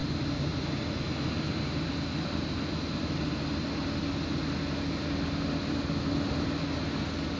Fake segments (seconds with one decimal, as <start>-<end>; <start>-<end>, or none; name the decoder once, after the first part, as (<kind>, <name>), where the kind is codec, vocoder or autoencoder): none